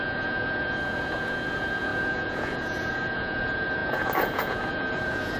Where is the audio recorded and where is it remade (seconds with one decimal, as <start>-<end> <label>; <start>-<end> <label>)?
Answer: 0.0-5.4 remade